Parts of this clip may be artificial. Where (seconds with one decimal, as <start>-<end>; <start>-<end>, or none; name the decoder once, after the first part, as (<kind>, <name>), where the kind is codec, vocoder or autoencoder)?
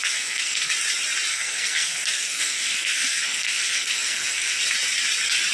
0.0-0.7 (codec, SNAC); 1.3-4.6